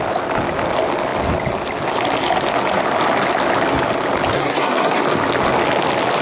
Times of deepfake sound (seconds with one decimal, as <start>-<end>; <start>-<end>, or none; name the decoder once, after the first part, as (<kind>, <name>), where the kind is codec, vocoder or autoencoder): 4.3-5.0 (codec, SNAC)